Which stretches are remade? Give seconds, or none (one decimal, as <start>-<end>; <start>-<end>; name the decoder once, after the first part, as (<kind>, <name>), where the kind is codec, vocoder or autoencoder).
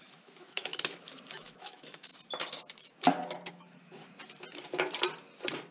0.0-0.7 (autoencoder, DAC-VAE); 1.3-2.1; 3.5-4.0